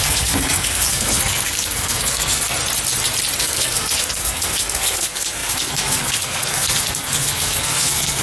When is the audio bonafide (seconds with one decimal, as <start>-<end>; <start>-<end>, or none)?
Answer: 2.6-3.4